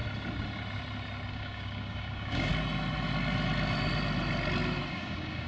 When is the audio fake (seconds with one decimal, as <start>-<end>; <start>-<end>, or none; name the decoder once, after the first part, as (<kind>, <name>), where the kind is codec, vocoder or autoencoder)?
1.3-2.5 (codec, DAC); 4.9-5.5